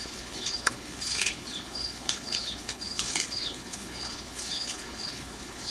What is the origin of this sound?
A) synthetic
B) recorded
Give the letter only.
A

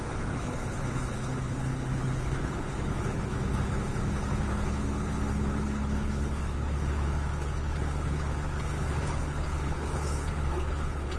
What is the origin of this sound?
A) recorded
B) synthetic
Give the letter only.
B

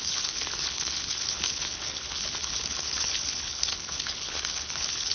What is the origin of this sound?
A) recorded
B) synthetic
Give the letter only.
B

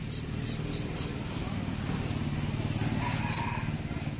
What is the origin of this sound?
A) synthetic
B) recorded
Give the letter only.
B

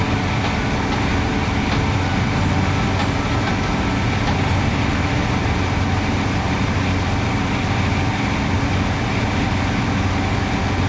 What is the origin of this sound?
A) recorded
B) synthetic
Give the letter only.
A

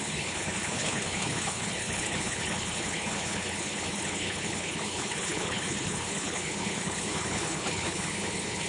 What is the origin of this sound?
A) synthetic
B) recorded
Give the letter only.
A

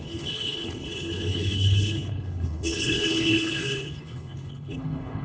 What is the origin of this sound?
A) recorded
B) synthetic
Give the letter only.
B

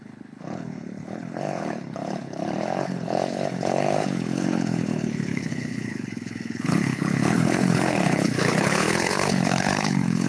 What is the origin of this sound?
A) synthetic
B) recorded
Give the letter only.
A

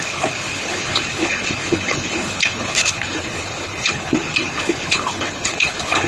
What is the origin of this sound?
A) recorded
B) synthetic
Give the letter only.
B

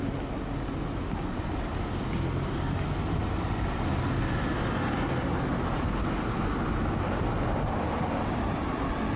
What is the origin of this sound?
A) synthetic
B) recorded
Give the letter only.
B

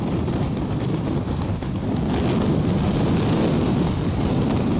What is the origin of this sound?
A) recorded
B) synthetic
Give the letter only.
A